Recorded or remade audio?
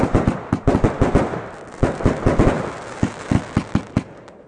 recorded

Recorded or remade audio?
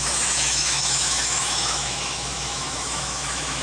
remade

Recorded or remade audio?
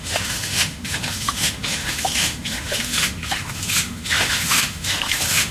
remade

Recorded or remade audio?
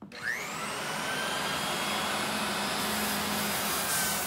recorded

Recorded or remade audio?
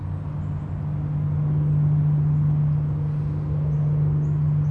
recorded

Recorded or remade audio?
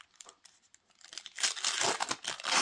recorded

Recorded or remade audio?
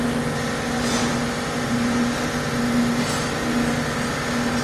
recorded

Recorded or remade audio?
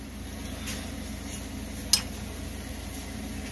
recorded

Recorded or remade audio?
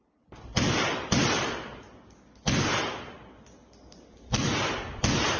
recorded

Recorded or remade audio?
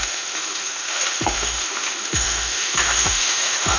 remade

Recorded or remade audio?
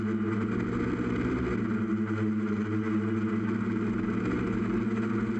recorded